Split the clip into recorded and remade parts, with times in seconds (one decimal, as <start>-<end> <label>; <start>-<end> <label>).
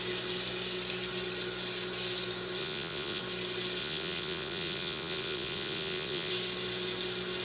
0.0-2.6 recorded; 2.6-3.2 remade; 3.2-3.8 recorded; 3.8-6.3 remade; 6.3-7.4 recorded